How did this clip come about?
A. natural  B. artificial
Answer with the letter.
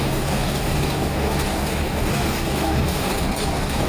B